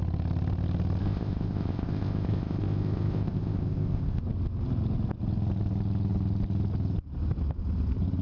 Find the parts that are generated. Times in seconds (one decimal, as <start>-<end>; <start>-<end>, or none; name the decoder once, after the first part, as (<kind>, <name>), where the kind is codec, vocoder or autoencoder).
1.0-4.2 (codec, ZipCodec)